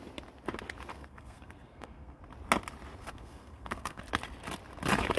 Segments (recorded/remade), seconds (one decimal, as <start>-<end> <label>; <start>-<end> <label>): 0.0-0.9 recorded; 0.9-2.2 remade; 2.2-3.0 recorded; 3.0-4.0 remade; 4.0-5.2 recorded